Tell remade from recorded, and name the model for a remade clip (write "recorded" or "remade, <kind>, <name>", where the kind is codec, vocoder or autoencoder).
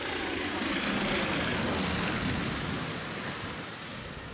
recorded